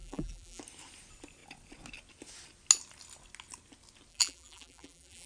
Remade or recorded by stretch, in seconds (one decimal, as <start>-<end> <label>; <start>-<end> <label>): 0.0-0.6 remade; 0.6-4.1 recorded; 4.1-5.3 remade